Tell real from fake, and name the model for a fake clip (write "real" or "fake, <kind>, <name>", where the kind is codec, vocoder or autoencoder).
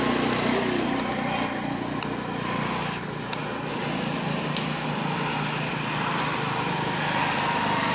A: real